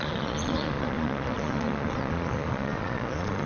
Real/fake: fake